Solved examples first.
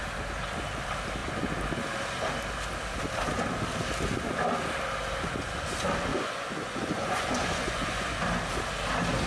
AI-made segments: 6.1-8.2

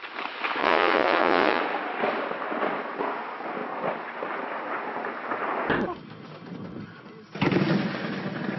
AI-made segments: 0.6-1.6

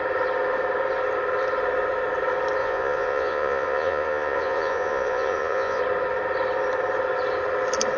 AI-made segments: 2.6-5.8

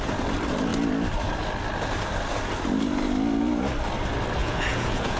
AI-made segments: 4.4-5.2